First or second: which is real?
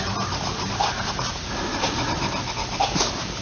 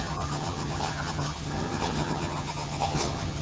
first